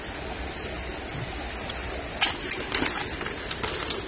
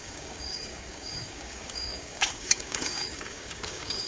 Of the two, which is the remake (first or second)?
second